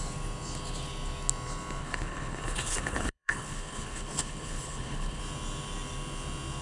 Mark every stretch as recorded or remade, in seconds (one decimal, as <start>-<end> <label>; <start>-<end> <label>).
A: 0.0-1.8 recorded; 1.8-5.2 remade; 5.2-6.6 recorded